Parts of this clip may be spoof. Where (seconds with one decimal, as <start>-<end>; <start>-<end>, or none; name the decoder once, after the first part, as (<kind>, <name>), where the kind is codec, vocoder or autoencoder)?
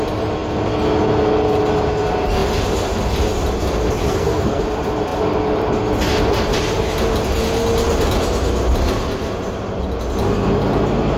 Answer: 4.0-4.6 (codec, SNAC)